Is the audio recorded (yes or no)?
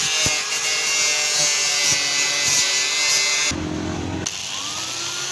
yes